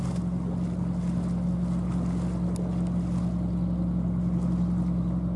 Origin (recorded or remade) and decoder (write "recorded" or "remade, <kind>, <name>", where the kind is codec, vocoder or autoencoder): recorded